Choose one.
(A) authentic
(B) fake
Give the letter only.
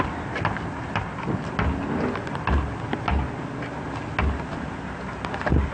A